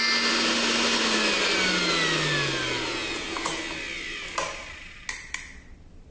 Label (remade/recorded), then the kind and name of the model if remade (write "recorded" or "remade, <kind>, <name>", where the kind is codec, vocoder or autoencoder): recorded